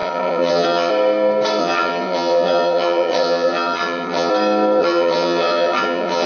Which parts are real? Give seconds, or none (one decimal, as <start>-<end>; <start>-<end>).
0.9-1.6; 4.3-4.8